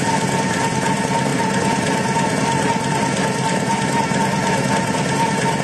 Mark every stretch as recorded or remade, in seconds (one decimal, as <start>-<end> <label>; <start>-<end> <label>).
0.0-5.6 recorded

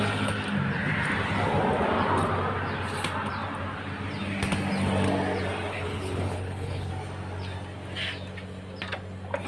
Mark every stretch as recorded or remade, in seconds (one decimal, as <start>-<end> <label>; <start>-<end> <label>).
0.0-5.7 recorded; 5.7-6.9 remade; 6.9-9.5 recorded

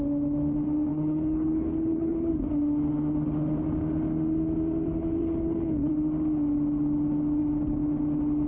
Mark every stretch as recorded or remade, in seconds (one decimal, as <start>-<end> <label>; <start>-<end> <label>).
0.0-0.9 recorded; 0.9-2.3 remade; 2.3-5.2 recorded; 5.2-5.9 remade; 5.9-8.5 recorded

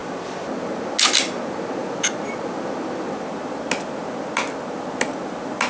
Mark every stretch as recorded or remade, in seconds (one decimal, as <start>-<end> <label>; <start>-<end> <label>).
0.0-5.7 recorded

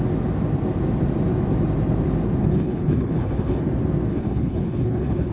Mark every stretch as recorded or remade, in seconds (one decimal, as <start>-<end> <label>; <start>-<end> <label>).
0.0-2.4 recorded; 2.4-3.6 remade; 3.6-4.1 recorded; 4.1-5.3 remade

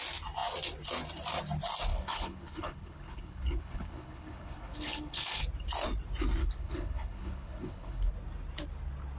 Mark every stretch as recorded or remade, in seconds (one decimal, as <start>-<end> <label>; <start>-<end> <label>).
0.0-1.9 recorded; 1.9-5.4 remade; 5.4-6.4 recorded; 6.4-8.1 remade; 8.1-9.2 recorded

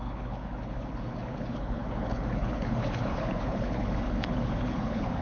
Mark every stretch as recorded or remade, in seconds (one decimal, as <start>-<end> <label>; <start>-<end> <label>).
0.0-5.2 remade

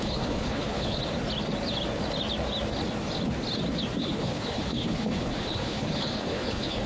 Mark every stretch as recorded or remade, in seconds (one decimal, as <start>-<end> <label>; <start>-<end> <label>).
0.0-1.0 remade; 1.0-4.0 recorded; 4.0-6.9 remade